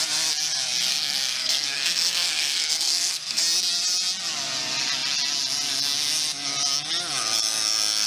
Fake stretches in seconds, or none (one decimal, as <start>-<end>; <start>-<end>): 0.9-3.4